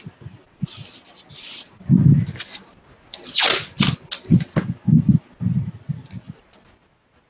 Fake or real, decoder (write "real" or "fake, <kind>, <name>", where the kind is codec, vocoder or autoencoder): real